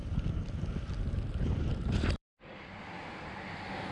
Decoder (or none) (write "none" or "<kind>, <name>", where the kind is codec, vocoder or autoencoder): vocoder, BigVGAN v2